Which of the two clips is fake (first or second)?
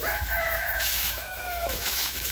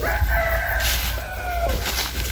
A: first